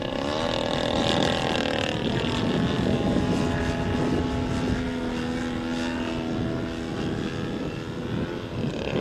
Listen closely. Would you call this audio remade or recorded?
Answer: recorded